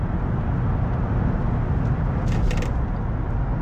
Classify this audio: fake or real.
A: real